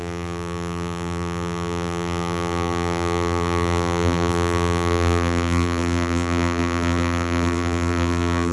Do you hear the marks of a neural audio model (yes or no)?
yes